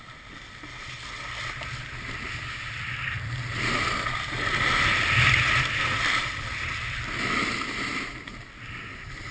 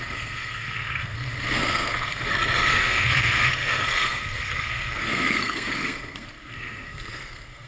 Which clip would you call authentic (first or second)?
first